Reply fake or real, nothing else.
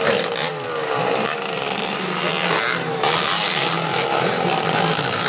real